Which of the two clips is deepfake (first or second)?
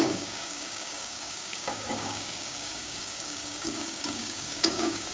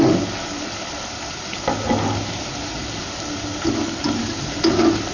first